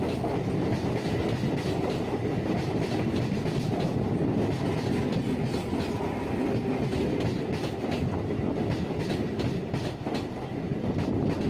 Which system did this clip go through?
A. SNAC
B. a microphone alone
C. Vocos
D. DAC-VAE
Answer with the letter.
B